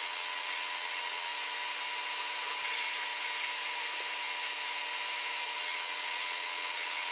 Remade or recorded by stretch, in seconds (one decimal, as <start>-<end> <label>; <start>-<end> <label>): 0.0-1.3 remade; 1.3-5.6 recorded; 5.6-7.1 remade